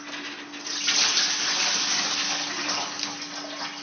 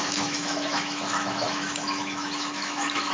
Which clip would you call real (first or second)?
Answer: first